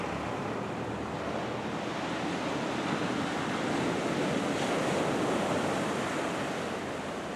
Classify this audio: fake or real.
real